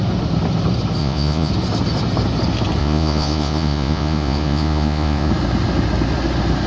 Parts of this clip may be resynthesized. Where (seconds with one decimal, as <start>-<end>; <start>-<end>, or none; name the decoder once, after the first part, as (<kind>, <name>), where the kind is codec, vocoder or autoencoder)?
1.0-1.5 (vocoder, Vocos); 2.8-5.3